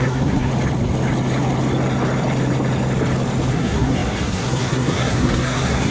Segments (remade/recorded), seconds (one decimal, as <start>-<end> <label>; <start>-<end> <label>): 0.0-0.5 remade; 0.5-3.5 recorded; 3.5-5.9 remade

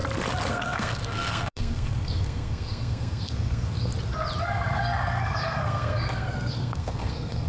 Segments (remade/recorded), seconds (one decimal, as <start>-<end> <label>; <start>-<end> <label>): 0.0-0.5 recorded; 0.5-3.9 remade; 3.9-4.4 recorded; 4.4-7.5 remade

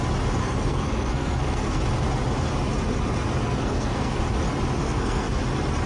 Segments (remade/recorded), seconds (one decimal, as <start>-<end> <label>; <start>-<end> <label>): 0.0-0.4 recorded; 0.4-1.8 remade; 1.8-3.4 recorded; 3.4-4.2 remade; 4.2-4.8 recorded; 4.8-5.4 remade; 5.4-5.9 recorded

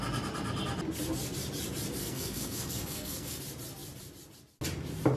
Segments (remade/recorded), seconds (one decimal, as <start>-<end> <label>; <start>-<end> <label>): 0.0-2.0 recorded; 2.0-3.4 remade; 3.4-5.2 recorded

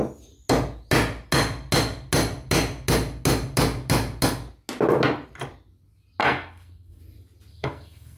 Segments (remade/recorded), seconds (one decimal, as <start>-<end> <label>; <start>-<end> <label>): 0.0-6.2 recorded; 6.2-7.0 remade; 7.0-7.5 recorded; 7.5-8.2 remade

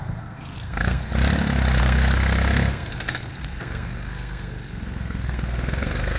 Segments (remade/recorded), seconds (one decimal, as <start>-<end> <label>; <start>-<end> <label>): 0.0-1.1 remade; 1.1-1.8 recorded; 1.8-6.2 remade

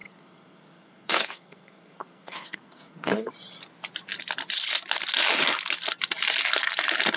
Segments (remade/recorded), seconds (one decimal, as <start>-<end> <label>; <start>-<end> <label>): 0.0-3.3 remade; 3.3-7.2 recorded

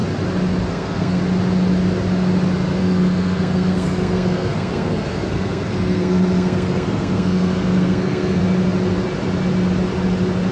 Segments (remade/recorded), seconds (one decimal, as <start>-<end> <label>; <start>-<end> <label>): 0.0-0.7 recorded; 0.7-1.2 remade; 1.2-2.8 recorded; 2.8-8.4 remade; 8.4-10.5 recorded